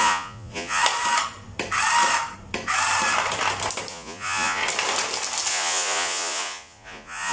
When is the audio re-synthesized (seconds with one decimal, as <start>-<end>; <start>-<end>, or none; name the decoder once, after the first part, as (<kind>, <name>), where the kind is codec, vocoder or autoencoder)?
0.0-0.8 (vocoder, Vocos); 3.9-4.6; 5.5-7.3